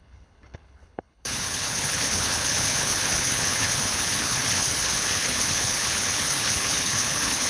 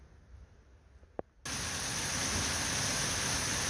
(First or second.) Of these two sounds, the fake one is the first